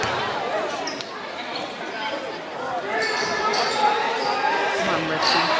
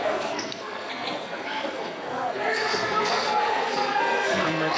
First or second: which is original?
first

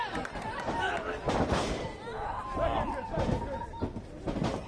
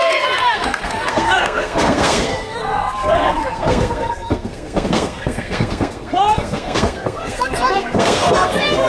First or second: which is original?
first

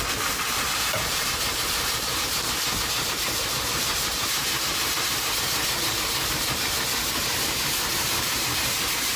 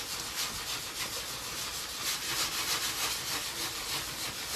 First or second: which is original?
second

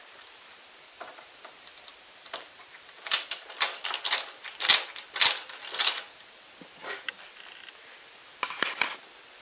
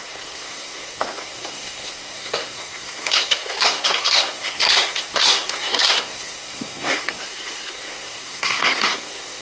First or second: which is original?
first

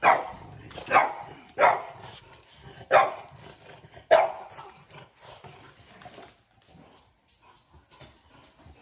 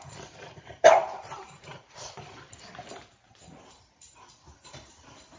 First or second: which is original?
first